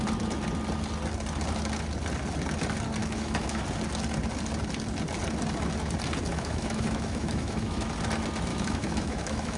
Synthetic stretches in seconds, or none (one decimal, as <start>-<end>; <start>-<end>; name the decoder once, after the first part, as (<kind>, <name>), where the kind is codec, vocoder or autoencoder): 3.0-3.6 (autoencoder, DAC-VAE); 6.3-7.9; 8.5-9.6